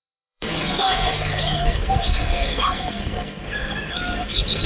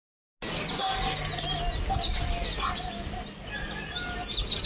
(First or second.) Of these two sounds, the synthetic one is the first